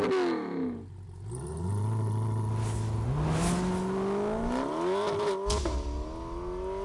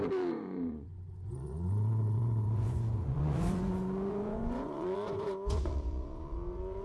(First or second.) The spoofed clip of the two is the second